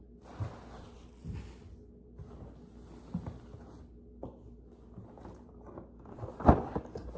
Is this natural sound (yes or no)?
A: yes